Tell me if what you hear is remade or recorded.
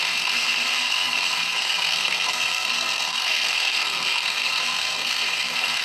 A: remade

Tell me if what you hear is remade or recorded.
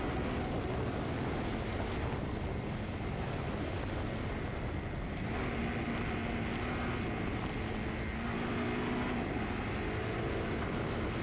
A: recorded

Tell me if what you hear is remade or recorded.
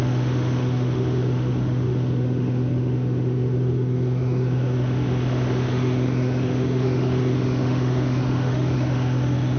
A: remade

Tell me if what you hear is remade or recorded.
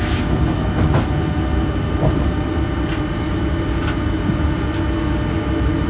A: recorded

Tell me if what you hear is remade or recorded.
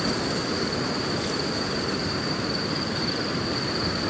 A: recorded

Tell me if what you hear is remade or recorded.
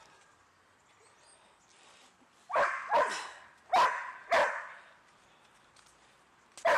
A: recorded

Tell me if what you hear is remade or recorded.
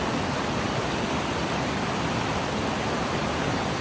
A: remade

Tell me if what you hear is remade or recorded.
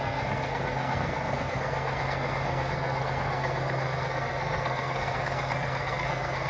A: remade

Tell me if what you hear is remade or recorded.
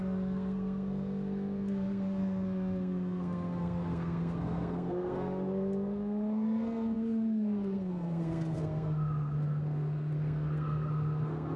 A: remade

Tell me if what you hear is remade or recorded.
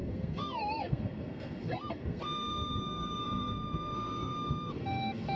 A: remade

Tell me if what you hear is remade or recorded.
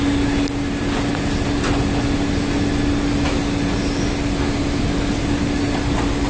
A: recorded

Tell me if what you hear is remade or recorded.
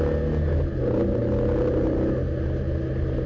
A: recorded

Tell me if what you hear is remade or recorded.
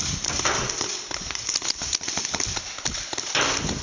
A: recorded